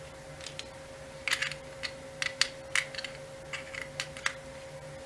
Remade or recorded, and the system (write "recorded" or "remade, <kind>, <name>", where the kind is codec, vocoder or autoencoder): recorded